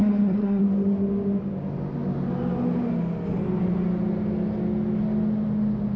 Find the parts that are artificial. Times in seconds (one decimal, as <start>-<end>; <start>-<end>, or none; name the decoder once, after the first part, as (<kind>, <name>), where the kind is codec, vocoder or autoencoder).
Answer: 0.0-0.6 (codec, SNAC)